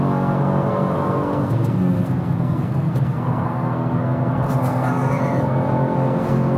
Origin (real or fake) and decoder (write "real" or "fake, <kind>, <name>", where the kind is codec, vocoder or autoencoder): fake, codec, SNAC